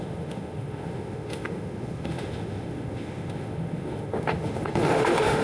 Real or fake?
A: fake